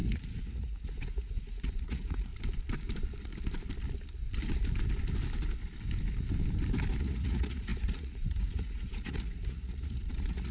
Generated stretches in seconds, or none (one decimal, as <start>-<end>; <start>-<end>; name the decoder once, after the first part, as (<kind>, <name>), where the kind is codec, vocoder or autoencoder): 0.0-2.3 (vocoder, Vocos); 7.0-10.5